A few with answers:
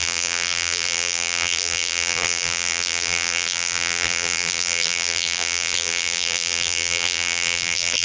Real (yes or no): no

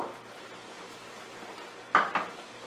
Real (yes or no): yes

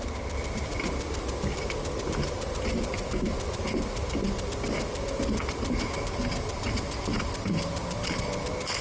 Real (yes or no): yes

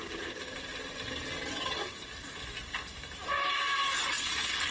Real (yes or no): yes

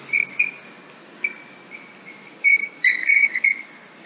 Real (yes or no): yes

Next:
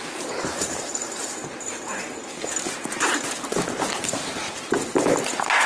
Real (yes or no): no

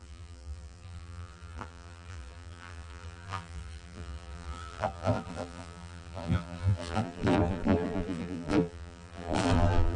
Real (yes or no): no